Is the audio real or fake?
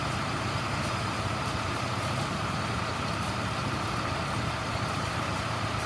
fake